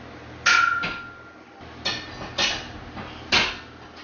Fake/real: real